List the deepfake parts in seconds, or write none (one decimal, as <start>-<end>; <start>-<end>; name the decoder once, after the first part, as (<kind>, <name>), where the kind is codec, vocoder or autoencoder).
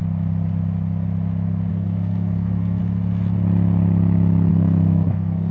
1.7-2.8 (codec, SNAC); 4.5-5.5